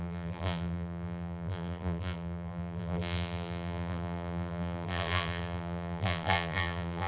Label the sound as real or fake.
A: fake